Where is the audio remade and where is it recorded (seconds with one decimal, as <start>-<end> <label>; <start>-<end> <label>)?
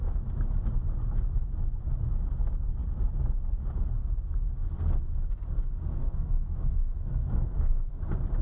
0.0-5.9 recorded; 5.9-8.0 remade; 8.0-8.4 recorded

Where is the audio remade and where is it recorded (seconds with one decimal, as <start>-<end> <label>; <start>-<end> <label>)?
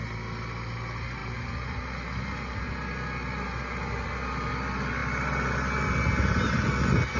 0.0-7.2 recorded